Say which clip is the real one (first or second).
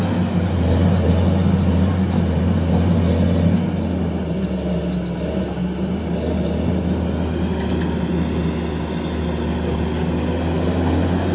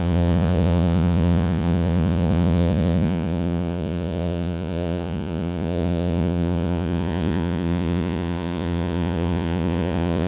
first